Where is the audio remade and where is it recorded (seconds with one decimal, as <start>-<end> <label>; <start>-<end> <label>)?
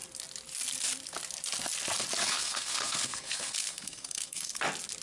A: 0.0-2.2 recorded; 2.2-4.6 remade; 4.6-5.0 recorded